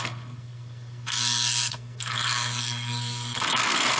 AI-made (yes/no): yes